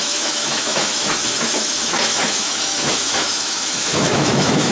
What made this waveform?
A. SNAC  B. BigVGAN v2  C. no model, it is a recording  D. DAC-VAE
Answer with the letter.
D